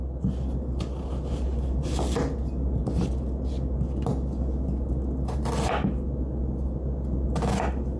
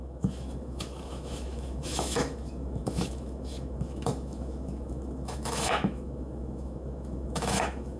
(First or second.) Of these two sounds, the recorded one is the first